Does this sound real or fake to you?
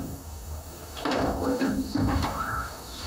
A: fake